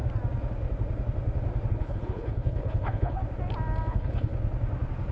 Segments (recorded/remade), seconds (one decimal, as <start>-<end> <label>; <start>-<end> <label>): 0.0-1.7 recorded; 1.7-3.2 remade; 3.2-3.9 recorded; 3.9-4.3 remade; 4.3-5.1 recorded